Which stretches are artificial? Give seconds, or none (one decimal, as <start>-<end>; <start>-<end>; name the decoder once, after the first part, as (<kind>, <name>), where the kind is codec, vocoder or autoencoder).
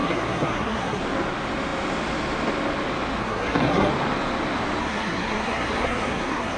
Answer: 0.0-1.0 (codec, SNAC); 3.2-3.9; 4.8-6.6